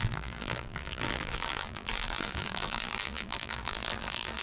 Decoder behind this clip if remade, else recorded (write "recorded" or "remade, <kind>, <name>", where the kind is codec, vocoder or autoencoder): remade, vocoder, BigVGAN v2